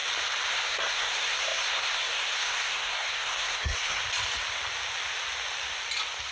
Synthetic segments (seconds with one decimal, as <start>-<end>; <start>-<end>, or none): 0.5-4.0